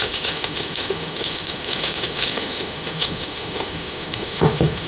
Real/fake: fake